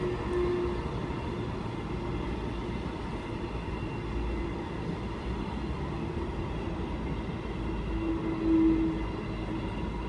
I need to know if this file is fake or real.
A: real